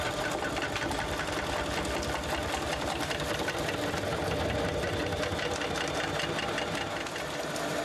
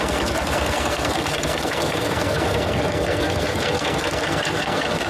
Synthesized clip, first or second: second